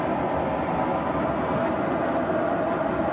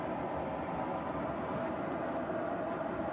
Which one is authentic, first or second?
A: first